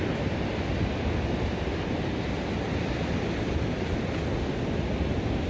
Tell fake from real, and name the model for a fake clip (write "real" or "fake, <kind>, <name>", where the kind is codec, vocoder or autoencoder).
real